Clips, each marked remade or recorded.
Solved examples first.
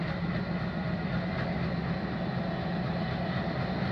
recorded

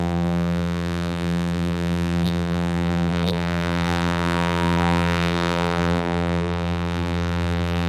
remade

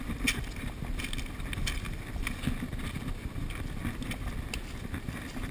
recorded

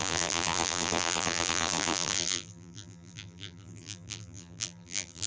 remade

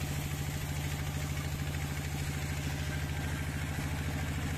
recorded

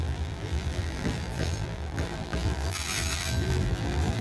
remade